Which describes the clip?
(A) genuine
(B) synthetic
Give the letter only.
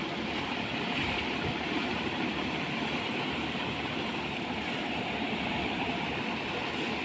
A